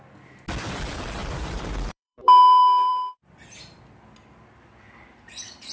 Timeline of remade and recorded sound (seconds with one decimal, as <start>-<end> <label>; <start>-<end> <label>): 0.0-1.2 recorded; 1.2-3.8 remade; 3.8-5.7 recorded